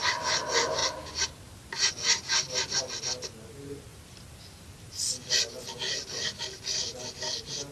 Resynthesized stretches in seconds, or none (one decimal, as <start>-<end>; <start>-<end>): none